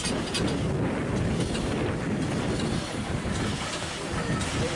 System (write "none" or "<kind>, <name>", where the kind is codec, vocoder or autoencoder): none